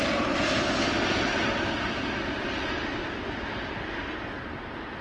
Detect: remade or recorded recorded